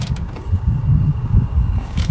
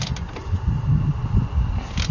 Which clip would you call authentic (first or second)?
second